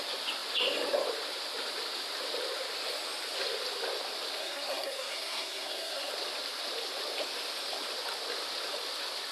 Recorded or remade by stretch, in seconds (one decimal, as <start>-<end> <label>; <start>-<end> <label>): 0.0-4.4 recorded; 4.4-6.1 remade; 6.1-9.3 recorded